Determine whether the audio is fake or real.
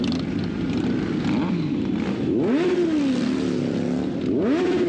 real